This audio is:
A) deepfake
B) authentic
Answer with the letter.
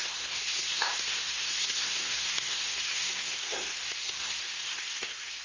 A